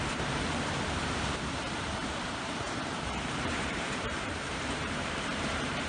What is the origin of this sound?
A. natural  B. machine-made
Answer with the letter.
B